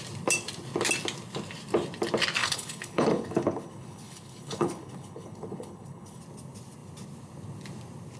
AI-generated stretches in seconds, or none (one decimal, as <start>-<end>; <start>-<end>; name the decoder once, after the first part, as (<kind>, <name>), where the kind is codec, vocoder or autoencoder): 2.4-6.2 (codec, HILCodec)